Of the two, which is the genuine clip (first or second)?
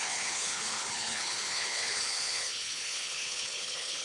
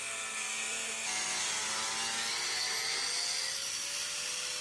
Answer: second